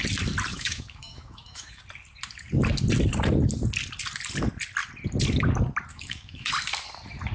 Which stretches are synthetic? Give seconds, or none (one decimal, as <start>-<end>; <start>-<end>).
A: 0.5-1.8; 5.9-6.5